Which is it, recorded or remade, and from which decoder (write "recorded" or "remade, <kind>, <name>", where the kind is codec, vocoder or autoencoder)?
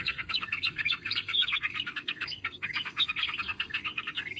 remade, codec, SNAC